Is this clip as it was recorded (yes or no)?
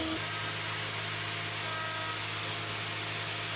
yes